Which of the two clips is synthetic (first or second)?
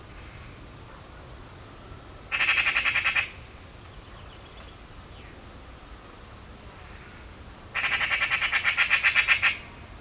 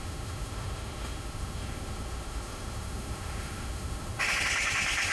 second